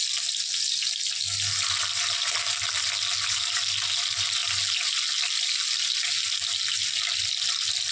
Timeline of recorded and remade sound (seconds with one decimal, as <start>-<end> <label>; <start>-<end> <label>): 0.0-7.9 recorded